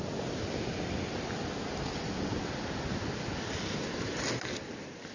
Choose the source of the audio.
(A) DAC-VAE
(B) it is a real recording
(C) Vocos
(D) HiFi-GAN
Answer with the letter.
B